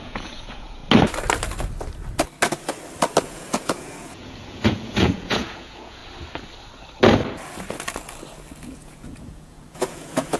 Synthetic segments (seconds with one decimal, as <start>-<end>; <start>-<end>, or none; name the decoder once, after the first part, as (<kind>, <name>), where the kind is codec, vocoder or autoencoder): 0.0-0.8 (vocoder, Vocos); 3.2-6.0; 8.6-10.4